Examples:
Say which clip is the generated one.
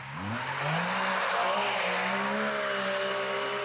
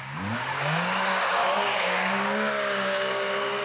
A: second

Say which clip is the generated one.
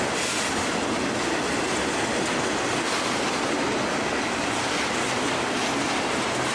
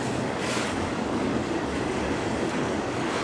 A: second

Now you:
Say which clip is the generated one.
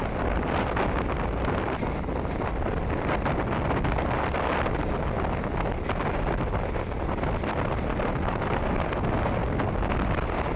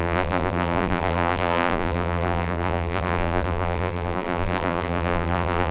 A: second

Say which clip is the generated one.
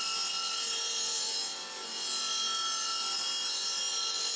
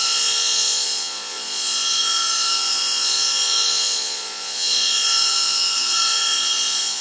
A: second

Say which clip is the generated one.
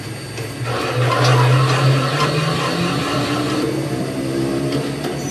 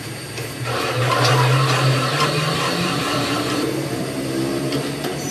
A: second